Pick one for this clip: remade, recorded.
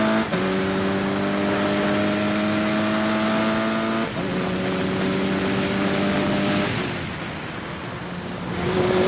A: recorded